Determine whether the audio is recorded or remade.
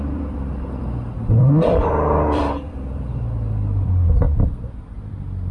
remade